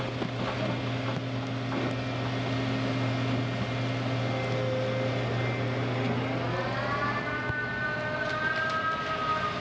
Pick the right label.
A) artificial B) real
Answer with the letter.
B